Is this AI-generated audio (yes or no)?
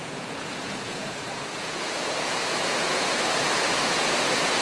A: yes